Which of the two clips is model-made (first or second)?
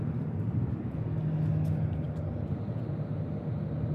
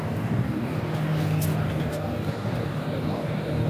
second